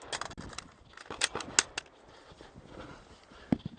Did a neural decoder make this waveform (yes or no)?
no